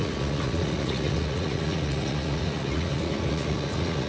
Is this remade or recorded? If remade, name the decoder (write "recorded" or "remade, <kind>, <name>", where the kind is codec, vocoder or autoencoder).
remade, vocoder, Vocos